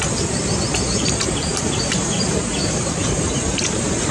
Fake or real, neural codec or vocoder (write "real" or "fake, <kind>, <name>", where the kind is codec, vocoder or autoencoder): fake, vocoder, BigVGAN v2